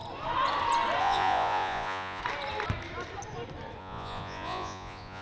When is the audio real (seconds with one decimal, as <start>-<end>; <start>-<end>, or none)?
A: 0.0-1.0; 2.2-3.8